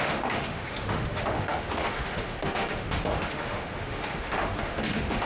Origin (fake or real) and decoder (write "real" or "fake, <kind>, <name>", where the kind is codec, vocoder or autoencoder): fake, autoencoder, DAC-VAE